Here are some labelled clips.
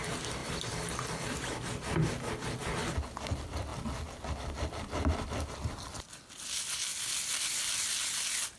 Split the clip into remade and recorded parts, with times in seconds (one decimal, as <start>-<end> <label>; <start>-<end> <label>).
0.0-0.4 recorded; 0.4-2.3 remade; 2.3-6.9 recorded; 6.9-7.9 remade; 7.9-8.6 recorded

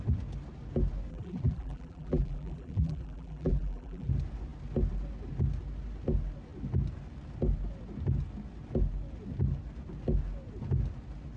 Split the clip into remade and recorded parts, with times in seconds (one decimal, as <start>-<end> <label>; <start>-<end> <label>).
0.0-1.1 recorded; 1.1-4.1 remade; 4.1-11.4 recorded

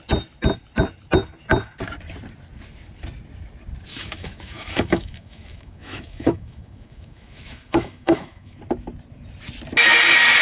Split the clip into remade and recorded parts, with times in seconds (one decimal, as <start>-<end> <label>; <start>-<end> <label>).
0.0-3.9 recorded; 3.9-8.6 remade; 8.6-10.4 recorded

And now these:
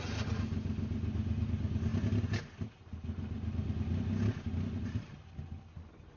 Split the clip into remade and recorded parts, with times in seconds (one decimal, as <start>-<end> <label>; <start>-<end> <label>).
0.0-6.2 recorded

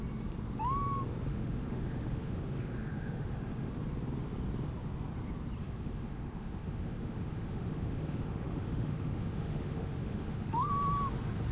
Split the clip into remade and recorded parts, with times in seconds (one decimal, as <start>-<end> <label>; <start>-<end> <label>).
0.0-1.3 recorded; 1.3-3.7 remade; 3.7-5.6 recorded; 5.6-10.7 remade; 10.7-11.5 recorded